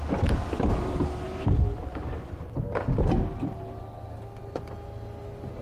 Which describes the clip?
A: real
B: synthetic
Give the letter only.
A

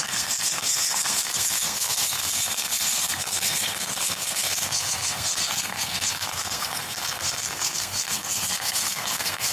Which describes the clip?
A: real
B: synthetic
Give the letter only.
B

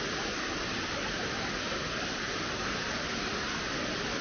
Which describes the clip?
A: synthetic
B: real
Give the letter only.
B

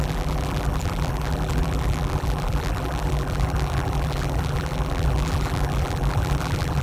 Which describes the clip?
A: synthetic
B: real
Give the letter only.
A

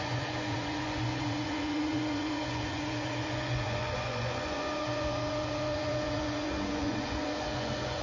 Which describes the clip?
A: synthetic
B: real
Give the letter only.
A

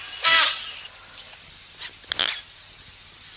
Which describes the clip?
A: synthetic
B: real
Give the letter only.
B